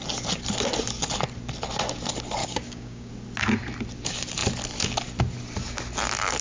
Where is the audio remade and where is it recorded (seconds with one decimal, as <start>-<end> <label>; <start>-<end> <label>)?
0.0-2.4 recorded; 2.4-3.1 remade; 3.1-6.4 recorded